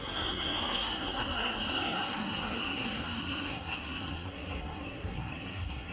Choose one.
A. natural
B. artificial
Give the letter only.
B